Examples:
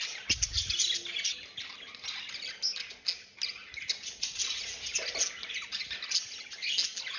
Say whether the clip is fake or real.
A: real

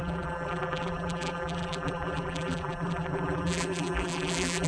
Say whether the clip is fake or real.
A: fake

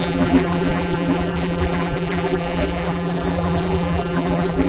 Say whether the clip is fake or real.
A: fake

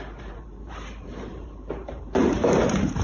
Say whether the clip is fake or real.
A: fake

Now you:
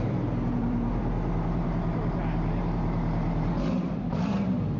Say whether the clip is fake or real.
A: fake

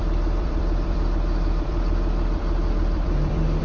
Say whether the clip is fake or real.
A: fake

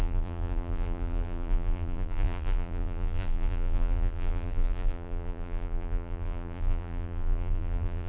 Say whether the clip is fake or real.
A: fake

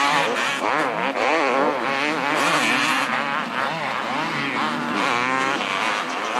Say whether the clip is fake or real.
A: real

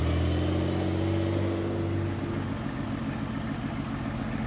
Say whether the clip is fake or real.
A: real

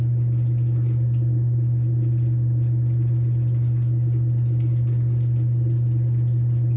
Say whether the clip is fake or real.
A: real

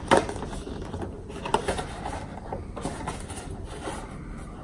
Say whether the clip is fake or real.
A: real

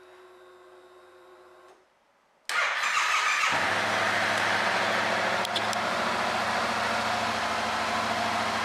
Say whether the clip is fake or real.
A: real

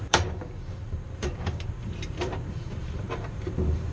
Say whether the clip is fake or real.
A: fake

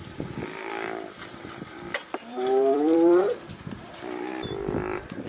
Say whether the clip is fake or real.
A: fake